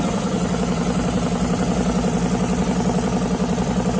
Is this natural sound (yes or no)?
no